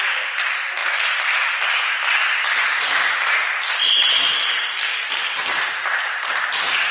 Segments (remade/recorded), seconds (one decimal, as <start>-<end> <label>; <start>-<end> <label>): 0.0-6.9 recorded

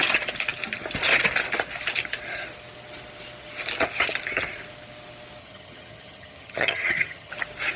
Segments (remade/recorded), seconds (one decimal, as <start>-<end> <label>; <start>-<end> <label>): 0.0-5.4 recorded; 5.4-7.3 remade; 7.3-7.8 recorded